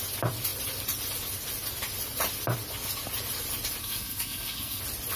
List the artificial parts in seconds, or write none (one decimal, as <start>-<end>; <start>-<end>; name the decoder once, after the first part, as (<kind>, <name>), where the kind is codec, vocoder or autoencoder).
3.8-4.8 (codec, SNAC)